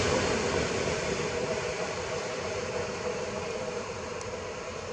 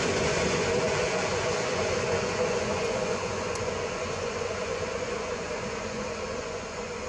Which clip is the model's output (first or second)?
second